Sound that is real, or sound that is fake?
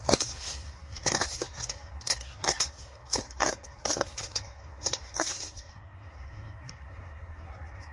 fake